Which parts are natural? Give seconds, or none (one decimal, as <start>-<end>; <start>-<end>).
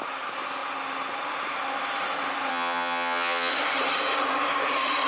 0.0-2.5; 3.5-5.1